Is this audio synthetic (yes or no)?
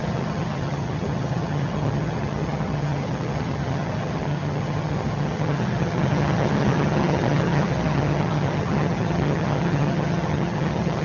yes